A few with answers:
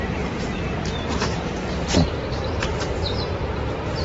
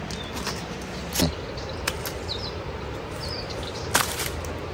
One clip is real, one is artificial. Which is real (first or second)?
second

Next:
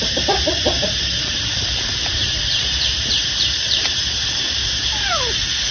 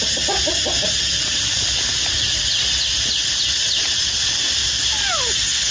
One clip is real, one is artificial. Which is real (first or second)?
second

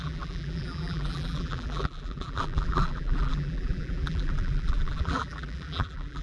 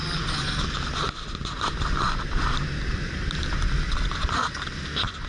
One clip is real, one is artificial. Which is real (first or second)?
second